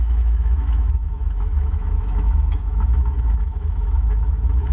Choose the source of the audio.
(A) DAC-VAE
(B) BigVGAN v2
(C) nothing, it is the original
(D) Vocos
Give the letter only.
A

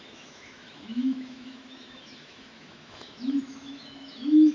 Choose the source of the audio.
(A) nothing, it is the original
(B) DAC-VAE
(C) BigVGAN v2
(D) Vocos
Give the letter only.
B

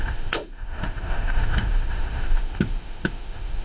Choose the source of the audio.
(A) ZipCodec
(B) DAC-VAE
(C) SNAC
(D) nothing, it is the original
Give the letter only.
B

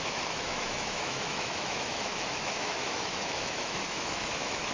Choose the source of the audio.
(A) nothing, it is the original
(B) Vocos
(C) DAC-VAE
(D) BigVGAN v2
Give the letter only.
C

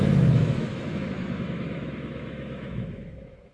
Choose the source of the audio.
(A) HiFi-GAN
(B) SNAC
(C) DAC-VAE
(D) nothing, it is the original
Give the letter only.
C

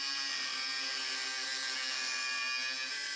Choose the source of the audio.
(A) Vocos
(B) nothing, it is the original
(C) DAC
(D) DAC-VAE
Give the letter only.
B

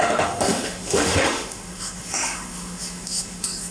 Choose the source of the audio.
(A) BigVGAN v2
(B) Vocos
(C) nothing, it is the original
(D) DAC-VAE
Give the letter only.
D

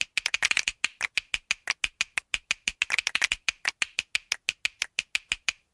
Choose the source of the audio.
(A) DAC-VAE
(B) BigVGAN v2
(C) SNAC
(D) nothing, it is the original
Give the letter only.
D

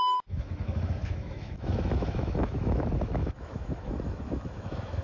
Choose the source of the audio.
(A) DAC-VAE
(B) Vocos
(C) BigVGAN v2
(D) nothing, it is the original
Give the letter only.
A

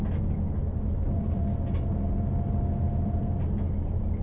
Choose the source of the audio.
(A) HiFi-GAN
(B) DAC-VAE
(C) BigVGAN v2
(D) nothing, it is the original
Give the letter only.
D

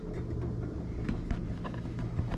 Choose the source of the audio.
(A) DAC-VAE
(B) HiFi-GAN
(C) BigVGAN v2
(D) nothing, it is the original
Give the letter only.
D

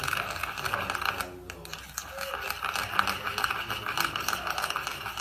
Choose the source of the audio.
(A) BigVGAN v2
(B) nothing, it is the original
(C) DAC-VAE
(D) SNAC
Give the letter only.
B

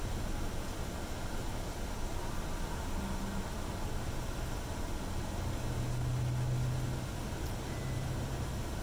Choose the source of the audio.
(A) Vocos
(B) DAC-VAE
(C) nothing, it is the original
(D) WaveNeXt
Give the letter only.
C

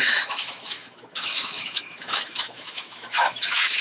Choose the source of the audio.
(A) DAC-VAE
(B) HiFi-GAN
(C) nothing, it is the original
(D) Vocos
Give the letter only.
A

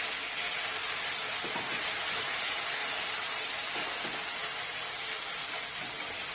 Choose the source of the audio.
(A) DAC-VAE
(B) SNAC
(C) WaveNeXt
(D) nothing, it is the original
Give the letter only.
D